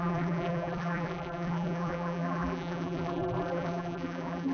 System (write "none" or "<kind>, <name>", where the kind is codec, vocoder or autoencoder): vocoder, BigVGAN v2